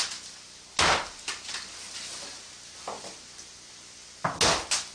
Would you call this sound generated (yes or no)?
no